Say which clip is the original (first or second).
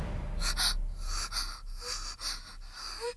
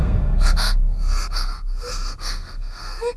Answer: first